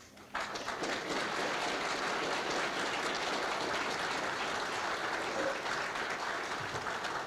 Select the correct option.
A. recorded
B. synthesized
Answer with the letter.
A